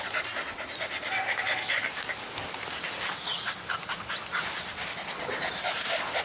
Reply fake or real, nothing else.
real